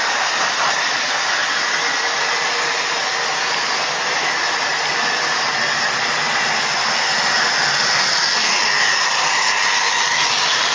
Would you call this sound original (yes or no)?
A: yes